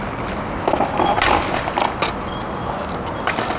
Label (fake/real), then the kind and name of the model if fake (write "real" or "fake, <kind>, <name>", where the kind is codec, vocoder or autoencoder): real